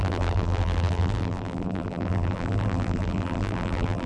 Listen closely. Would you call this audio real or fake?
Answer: fake